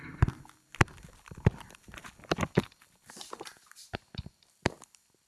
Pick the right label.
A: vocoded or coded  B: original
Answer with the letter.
B